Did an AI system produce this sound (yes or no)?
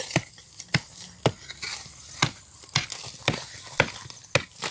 no